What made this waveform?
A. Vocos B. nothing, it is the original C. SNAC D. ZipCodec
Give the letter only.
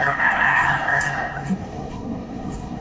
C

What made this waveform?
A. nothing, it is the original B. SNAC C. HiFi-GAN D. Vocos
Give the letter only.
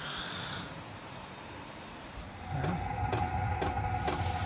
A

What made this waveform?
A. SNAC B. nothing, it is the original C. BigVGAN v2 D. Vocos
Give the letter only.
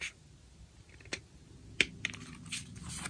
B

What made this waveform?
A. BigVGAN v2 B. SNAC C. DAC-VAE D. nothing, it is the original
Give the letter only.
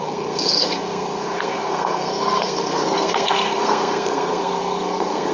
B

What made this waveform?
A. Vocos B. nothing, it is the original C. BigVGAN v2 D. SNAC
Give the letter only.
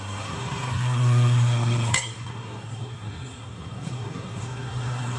D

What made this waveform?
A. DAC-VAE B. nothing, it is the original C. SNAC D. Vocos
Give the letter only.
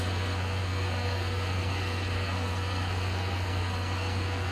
C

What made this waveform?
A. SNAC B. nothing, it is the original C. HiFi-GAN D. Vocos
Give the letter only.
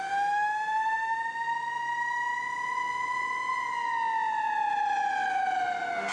B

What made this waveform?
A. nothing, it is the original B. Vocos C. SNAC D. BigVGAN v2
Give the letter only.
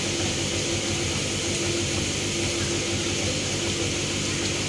A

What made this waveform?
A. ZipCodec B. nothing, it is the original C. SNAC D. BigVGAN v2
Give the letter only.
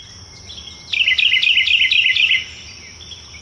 B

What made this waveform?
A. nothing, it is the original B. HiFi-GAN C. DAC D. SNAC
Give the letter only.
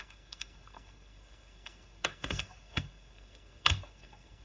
D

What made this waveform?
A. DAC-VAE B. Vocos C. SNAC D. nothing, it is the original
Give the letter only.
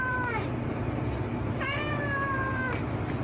D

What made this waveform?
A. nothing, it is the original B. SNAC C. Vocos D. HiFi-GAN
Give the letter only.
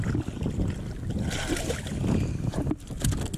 A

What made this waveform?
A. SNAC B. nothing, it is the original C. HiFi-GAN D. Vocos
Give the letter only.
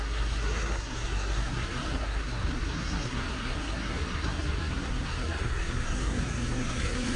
A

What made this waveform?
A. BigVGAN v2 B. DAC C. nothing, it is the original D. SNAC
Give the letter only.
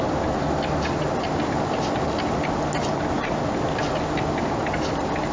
C